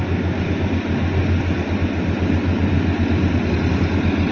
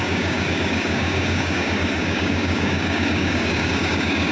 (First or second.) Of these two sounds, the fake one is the second